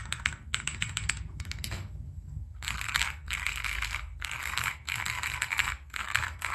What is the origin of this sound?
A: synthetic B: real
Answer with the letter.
A